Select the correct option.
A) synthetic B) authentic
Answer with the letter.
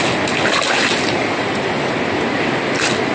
B